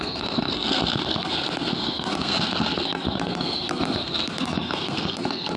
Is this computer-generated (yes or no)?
yes